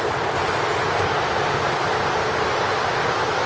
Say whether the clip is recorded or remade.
recorded